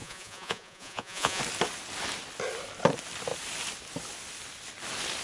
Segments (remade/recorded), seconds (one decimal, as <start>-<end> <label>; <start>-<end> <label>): 0.0-1.4 remade; 1.4-5.2 recorded

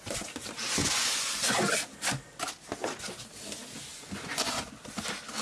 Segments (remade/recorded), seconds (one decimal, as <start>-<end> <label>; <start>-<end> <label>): 0.0-0.8 recorded; 0.8-1.7 remade; 1.7-3.9 recorded; 3.9-4.7 remade; 4.7-5.4 recorded

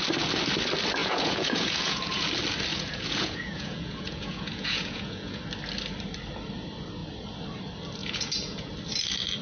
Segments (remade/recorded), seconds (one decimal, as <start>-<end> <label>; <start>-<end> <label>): 0.0-1.0 recorded; 1.0-2.3 remade; 2.3-2.7 recorded; 2.7-5.4 remade; 5.4-8.0 recorded; 8.0-8.7 remade; 8.7-9.4 recorded

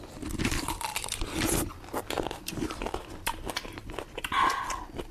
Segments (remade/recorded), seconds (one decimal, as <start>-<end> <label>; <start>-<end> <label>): 0.0-5.1 recorded

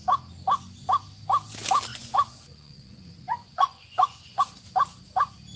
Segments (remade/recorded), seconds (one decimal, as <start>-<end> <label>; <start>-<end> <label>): 0.0-1.9 recorded; 1.9-4.4 remade; 4.4-5.6 recorded

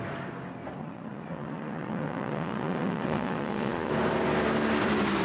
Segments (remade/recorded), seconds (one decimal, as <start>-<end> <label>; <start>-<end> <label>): 0.0-0.8 recorded; 0.8-3.9 remade; 3.9-5.2 recorded

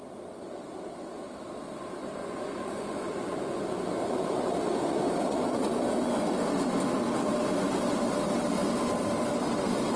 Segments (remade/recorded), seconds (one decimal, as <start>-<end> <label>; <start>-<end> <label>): 0.0-2.2 recorded; 2.2-5.8 remade; 5.8-10.0 recorded